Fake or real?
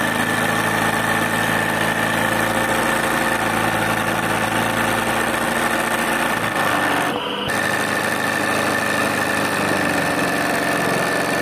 real